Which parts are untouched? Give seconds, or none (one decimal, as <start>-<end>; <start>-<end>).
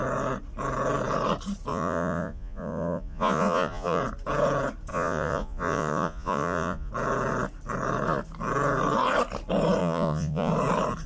0.0-1.7; 4.0-4.9; 6.9-9.8; 10.5-11.1